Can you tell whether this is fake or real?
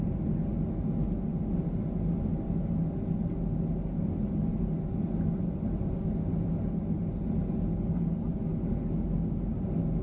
real